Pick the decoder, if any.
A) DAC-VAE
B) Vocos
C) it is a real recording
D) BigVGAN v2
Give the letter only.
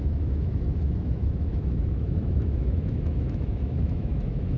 A